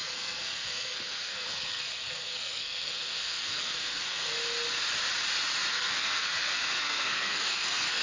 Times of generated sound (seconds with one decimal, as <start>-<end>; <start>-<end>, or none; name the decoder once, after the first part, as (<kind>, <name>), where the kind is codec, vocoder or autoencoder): 0.0-4.3 (codec, SNAC); 5.7-8.0